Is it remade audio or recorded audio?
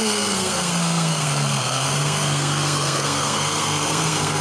remade